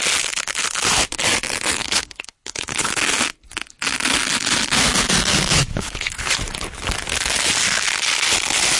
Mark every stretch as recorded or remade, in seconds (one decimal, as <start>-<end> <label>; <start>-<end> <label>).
0.0-1.8 recorded; 1.8-2.9 remade; 2.9-5.7 recorded; 5.7-6.3 remade; 6.3-8.8 recorded